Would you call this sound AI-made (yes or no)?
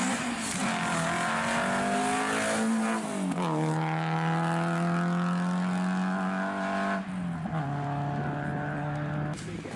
no